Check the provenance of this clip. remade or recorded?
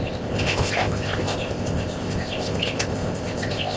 remade